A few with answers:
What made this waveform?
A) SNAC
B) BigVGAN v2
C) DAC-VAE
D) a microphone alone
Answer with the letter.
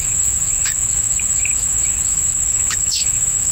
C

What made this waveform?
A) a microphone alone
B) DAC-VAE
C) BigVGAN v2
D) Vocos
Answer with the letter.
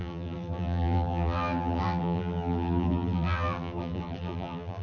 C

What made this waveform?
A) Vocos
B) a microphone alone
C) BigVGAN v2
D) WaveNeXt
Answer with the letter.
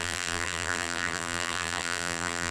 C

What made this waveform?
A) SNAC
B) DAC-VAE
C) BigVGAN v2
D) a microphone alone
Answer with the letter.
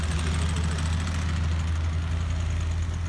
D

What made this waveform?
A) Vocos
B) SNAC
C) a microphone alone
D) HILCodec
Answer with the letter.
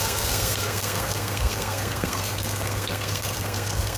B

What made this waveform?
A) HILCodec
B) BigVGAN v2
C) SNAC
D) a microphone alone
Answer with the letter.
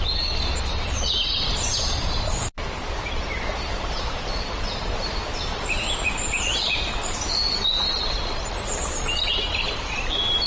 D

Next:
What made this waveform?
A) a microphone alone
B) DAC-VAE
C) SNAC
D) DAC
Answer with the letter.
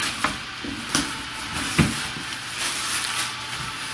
A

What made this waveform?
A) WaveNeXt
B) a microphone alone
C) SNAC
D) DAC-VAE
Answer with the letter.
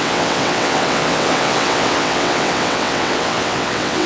A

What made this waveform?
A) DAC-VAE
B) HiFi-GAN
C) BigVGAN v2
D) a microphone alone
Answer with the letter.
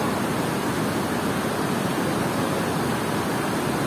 D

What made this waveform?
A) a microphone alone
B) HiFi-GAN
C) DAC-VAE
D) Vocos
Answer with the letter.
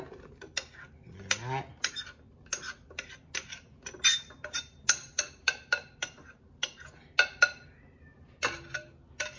A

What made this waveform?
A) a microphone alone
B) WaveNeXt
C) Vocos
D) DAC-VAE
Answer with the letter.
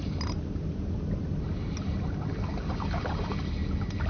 A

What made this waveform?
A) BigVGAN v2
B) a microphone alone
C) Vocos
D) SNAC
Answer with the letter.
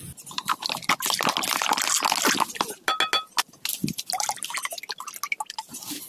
B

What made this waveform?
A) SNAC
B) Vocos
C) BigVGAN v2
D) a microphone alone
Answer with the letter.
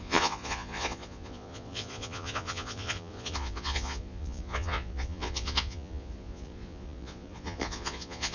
B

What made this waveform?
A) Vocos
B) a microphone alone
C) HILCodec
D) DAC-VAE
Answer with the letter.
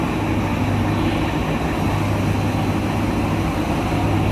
B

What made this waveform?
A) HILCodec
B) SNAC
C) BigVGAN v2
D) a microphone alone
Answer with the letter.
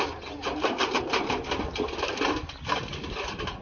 C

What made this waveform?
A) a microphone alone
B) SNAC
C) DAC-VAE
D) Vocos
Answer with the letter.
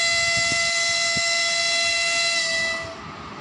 A